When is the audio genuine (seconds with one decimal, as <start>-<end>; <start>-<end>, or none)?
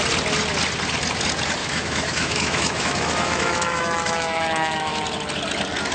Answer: 0.0-1.6; 5.0-5.9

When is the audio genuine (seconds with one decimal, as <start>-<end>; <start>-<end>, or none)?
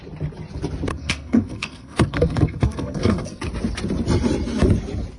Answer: 0.0-0.9; 3.4-5.2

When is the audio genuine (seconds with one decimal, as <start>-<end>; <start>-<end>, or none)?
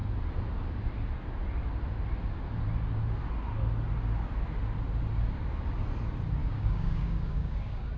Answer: 0.0-6.4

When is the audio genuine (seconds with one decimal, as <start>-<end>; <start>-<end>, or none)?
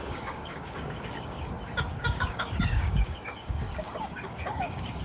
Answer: 1.5-1.9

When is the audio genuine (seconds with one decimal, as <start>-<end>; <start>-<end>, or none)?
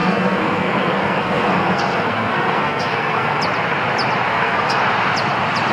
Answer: 3.4-4.3; 4.8-5.7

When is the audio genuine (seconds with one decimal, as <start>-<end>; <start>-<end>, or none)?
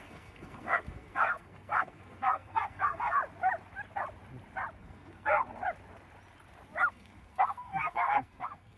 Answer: 3.2-4.8; 5.4-6.9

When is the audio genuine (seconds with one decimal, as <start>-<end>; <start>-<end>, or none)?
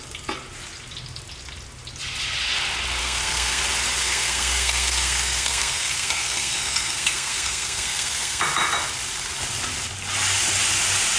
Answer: 0.0-3.0; 3.6-4.0; 8.4-11.2